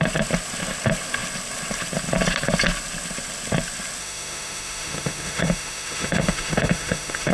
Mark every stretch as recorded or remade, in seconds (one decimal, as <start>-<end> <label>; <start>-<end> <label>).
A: 0.0-4.0 recorded; 4.0-7.3 remade